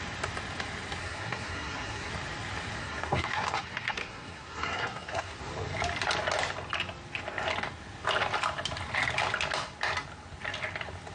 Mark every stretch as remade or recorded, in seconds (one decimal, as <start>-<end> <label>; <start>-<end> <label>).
0.0-1.0 recorded; 1.0-2.1 remade; 2.1-2.8 recorded; 2.8-5.4 remade; 5.4-11.1 recorded